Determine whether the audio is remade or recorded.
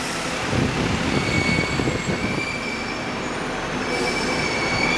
recorded